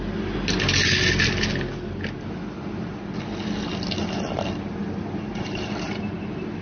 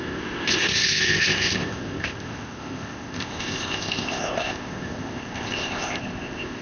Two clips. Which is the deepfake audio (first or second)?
second